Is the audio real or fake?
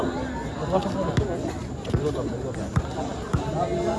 real